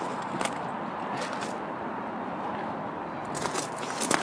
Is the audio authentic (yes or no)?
yes